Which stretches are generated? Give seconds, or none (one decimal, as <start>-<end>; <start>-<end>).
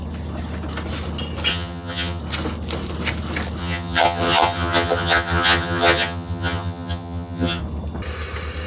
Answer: 1.5-2.2; 3.6-7.6